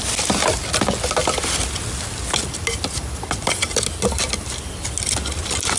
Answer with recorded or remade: recorded